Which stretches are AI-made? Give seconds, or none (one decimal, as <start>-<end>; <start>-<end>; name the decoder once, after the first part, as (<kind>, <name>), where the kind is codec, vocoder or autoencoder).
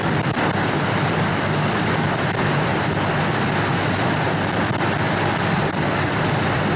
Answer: none